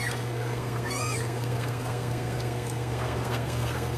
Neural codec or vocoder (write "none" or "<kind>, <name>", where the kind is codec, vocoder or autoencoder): codec, SNAC